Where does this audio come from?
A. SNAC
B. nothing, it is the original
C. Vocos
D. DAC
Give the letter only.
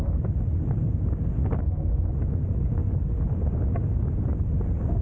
B